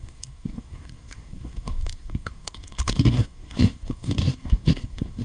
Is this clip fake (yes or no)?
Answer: yes